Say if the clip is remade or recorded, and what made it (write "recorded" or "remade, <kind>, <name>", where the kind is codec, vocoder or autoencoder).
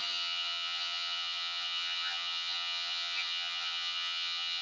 remade, vocoder, HiFi-GAN